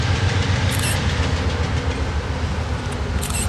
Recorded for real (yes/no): yes